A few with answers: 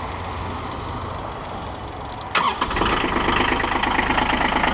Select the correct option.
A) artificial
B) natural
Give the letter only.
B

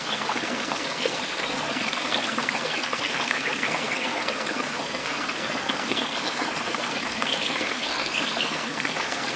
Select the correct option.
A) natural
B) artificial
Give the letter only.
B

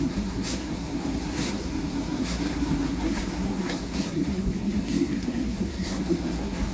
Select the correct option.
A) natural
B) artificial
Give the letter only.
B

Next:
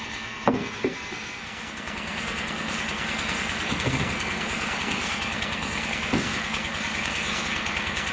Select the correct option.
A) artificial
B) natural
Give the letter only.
A